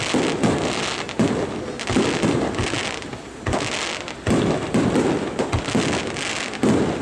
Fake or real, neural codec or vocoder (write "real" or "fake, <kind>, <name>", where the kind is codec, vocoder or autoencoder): real